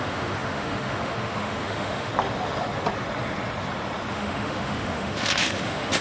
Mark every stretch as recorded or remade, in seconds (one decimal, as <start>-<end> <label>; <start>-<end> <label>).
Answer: 0.0-2.1 remade; 2.1-4.1 recorded; 4.1-6.0 remade